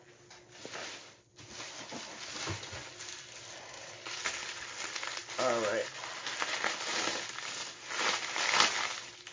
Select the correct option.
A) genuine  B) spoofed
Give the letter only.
A